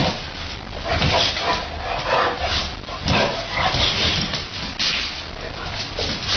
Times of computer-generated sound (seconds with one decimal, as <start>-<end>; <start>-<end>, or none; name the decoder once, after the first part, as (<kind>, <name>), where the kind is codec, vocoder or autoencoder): none